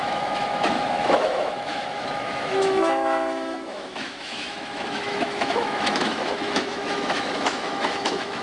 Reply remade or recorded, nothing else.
remade